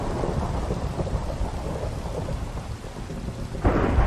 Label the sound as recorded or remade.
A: recorded